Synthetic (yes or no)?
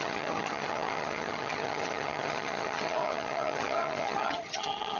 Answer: yes